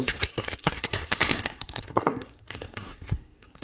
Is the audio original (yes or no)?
no